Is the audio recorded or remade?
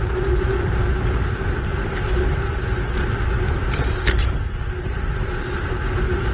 recorded